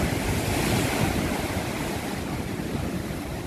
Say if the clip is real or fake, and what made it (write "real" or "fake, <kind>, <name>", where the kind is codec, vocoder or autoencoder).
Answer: real